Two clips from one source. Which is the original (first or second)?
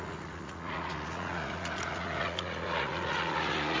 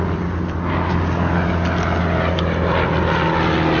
second